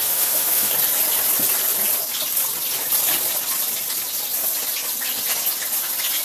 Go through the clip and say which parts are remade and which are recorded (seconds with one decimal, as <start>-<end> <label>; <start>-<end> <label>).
0.0-0.7 remade; 0.7-6.2 recorded